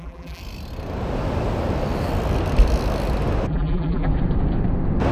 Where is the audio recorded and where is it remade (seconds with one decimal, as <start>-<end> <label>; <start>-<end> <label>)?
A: 0.0-0.4 remade; 0.4-3.5 recorded; 3.5-4.1 remade; 4.1-5.1 recorded